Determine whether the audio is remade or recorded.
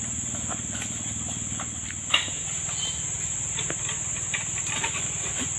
recorded